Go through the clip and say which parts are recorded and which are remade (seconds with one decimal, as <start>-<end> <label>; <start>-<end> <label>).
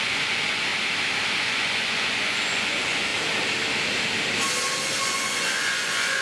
0.0-0.7 remade; 0.7-1.4 recorded; 1.4-3.1 remade; 3.1-5.0 recorded; 5.0-6.2 remade